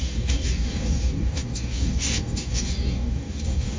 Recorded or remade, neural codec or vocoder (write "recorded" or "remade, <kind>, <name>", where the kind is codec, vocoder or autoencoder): remade, codec, DAC